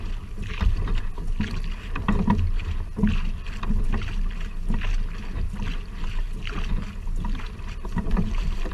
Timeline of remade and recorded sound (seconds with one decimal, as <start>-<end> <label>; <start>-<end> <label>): 0.0-7.9 recorded; 7.9-8.7 remade